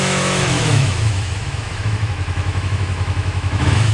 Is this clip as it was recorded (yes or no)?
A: no